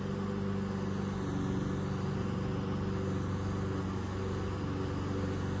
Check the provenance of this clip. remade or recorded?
recorded